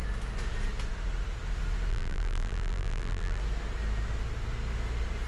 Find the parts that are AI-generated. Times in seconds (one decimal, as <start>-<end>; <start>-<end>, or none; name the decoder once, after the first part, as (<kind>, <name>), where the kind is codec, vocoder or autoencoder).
1.9-3.4 (vocoder, BigVGAN v2)